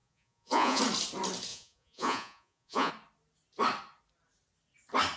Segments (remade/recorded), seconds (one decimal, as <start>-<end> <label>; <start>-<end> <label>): 0.0-0.8 remade; 0.8-1.5 recorded; 1.5-2.9 remade; 2.9-5.2 recorded